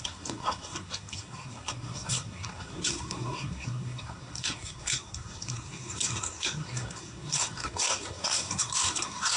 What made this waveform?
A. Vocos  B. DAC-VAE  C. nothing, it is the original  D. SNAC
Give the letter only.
D